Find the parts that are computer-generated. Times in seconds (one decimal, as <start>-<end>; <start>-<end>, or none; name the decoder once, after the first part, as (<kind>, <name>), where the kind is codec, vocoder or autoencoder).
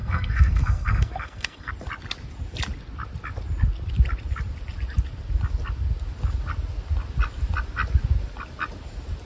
0.0-1.7 (codec, SNAC)